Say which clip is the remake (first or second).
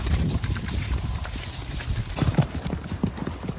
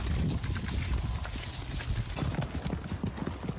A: first